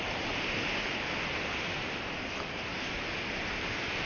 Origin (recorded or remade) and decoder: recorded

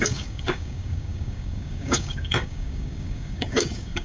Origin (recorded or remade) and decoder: remade, codec, DAC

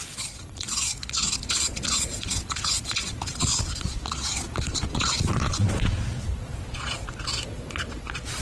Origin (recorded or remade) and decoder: remade, vocoder, Vocos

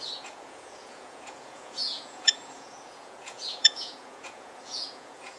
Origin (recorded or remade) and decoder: remade, vocoder, Vocos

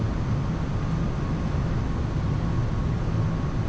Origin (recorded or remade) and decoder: recorded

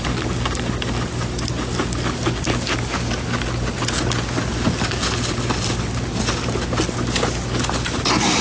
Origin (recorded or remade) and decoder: recorded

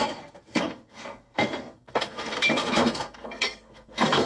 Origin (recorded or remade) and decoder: remade, codec, SNAC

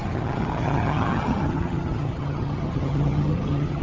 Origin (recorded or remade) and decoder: remade, vocoder, HiFi-GAN